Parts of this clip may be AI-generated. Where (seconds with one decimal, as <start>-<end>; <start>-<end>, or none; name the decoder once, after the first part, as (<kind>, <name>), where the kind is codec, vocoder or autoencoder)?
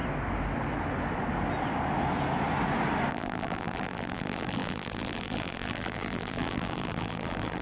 3.1-7.6 (vocoder, BigVGAN v2)